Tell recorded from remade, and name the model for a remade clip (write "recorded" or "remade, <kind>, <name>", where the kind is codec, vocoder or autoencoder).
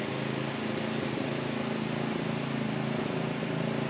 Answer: recorded